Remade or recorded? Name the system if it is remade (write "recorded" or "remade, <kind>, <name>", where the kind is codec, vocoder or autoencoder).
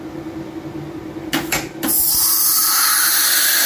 recorded